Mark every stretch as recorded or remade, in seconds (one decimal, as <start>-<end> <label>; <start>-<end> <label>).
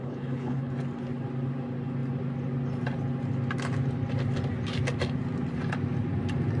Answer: 0.0-0.7 remade; 0.7-6.6 recorded